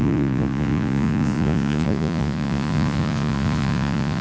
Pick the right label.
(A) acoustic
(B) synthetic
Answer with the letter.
B